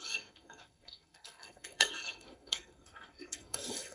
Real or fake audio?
fake